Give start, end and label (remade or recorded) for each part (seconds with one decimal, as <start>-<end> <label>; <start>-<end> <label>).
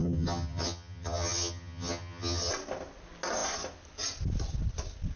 0.0-2.5 remade; 2.5-5.2 recorded